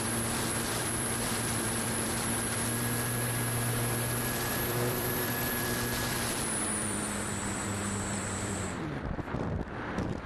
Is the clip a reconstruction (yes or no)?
yes